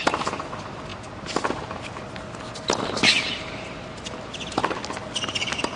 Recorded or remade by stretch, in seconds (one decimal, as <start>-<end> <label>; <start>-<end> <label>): 0.0-5.8 recorded